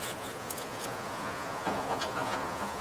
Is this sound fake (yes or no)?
yes